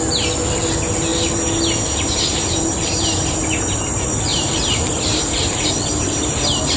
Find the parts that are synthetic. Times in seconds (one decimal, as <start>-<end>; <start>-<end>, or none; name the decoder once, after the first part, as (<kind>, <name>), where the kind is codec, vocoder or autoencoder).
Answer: 4.3-5.2 (vocoder, BigVGAN v2)